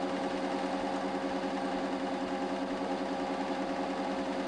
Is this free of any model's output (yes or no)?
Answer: yes